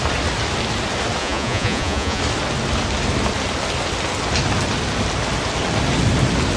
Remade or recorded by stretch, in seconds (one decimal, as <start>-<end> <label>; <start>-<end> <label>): 0.0-1.2 recorded; 1.2-2.2 remade; 2.2-6.6 recorded